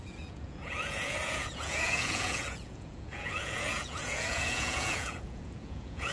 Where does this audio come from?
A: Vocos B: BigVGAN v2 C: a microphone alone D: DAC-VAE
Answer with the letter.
A